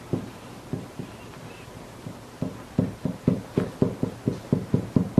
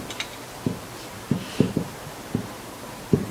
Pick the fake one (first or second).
second